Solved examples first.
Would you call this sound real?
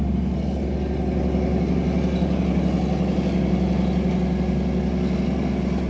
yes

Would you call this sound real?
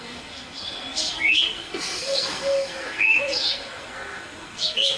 no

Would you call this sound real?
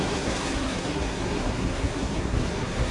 no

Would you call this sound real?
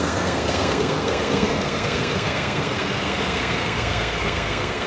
no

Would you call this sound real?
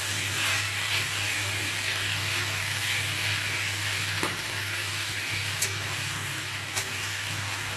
no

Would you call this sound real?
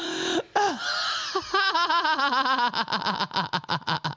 yes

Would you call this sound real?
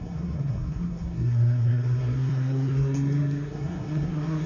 no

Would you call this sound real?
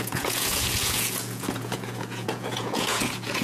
no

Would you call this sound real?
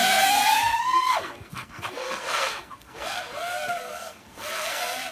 no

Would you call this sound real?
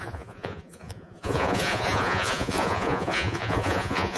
no